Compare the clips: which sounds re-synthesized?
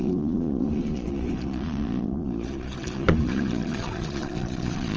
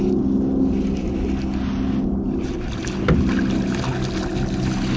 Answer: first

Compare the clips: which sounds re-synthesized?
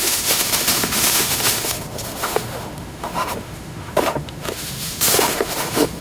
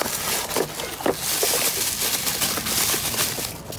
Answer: first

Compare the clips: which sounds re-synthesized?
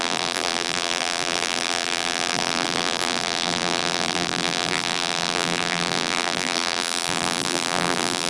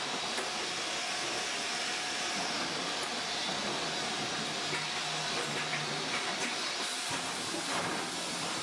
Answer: first